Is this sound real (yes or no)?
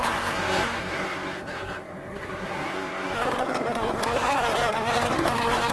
no